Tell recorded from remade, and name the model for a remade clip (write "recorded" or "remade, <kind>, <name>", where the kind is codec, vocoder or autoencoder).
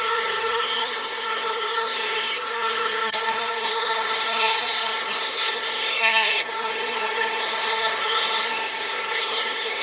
remade, codec, SNAC